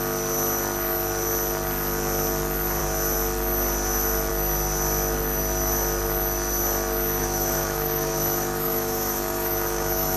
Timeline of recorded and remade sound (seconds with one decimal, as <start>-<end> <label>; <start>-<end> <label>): 0.0-7.2 recorded; 7.2-10.2 remade